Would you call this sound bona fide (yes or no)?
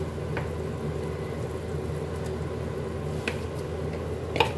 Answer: yes